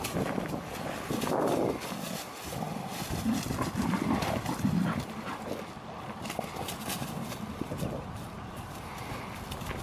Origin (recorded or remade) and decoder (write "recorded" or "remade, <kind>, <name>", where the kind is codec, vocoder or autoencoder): recorded